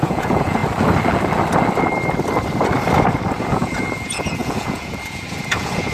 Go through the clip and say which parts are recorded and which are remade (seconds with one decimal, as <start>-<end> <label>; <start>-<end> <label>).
0.0-0.6 remade; 0.6-3.4 recorded; 3.4-5.9 remade